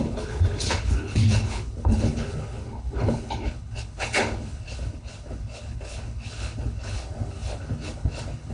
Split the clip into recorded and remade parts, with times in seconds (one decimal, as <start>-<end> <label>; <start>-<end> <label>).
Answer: 0.0-8.5 remade